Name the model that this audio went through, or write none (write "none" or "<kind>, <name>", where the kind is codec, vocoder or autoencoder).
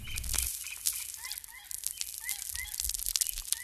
none